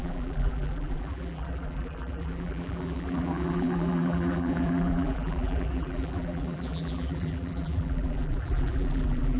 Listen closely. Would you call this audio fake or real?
fake